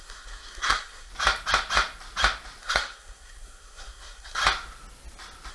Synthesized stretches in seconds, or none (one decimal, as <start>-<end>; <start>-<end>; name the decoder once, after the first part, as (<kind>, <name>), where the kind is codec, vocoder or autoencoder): 0.0-1.1 (codec, SNAC); 2.6-4.4